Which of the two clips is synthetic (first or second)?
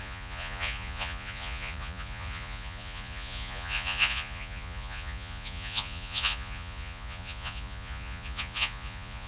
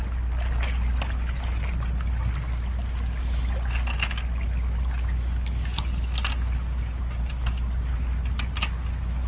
first